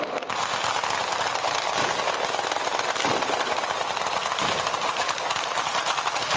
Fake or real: real